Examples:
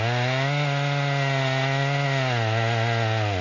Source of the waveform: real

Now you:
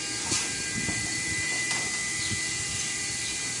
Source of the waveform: fake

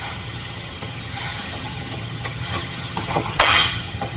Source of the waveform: fake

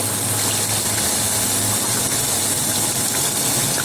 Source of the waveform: real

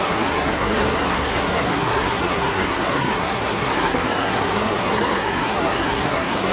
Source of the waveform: fake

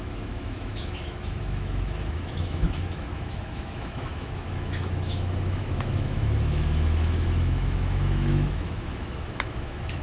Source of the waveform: fake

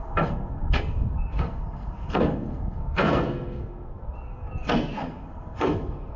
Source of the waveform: fake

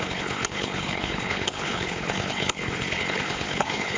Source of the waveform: fake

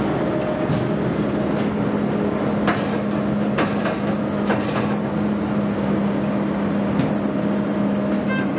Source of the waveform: real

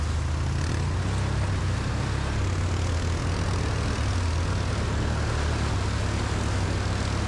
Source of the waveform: real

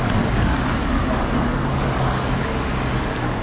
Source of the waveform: fake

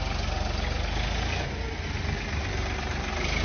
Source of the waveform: real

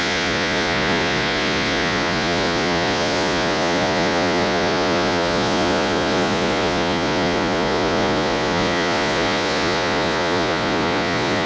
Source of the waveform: fake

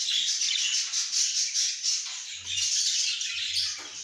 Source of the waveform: real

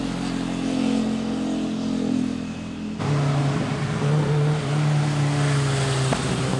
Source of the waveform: real